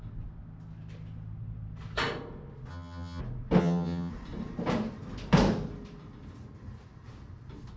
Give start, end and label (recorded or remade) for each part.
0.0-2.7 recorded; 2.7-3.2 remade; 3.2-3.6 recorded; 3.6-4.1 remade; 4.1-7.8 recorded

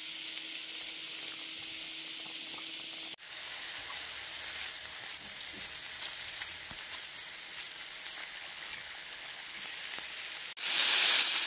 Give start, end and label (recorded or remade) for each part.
0.0-8.2 recorded; 8.2-9.6 remade; 9.6-11.5 recorded